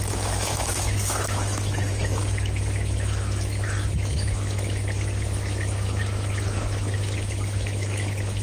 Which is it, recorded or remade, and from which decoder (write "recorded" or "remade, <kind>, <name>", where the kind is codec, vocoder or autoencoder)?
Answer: remade, autoencoder, DAC-VAE